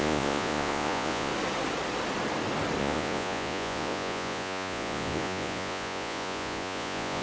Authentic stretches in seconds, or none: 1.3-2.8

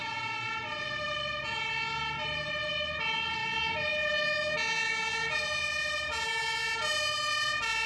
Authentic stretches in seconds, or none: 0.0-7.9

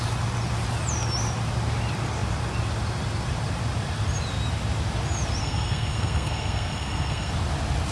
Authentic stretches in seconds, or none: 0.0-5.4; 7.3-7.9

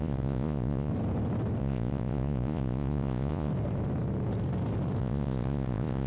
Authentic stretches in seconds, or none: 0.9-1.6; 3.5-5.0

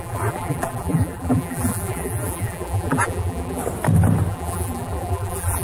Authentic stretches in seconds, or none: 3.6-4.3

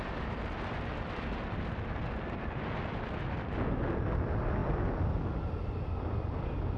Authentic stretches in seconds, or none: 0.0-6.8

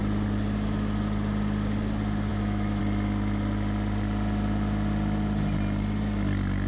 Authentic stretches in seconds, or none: 0.0-2.3; 2.8-6.7

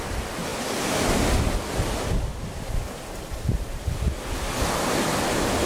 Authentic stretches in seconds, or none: 0.0-0.5; 1.0-2.3; 4.1-5.7